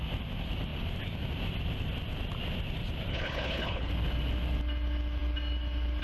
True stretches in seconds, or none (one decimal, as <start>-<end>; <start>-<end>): 0.0-3.1; 3.9-6.0